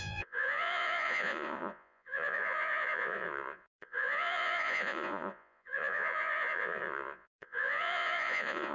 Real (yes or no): no